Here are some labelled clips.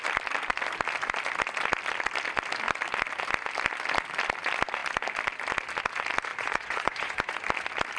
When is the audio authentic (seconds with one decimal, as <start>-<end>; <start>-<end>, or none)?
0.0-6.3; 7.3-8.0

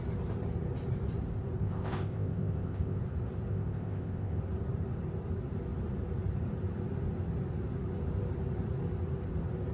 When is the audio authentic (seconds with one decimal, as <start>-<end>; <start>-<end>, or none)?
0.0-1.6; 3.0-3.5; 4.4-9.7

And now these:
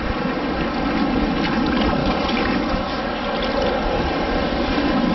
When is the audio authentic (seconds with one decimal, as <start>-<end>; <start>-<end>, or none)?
0.0-2.0; 3.2-5.1

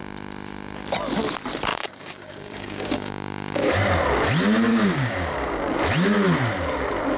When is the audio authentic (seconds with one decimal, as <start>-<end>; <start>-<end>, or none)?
0.0-1.7; 3.7-4.7; 5.7-7.2

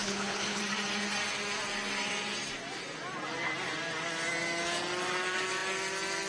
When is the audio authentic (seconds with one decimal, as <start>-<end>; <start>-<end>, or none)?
0.6-6.3